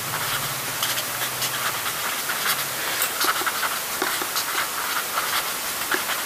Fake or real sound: real